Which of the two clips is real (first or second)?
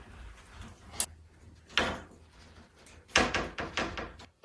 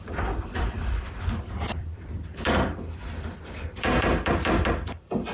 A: first